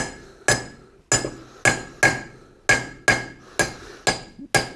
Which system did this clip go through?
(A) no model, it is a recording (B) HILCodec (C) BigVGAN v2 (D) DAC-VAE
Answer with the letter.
A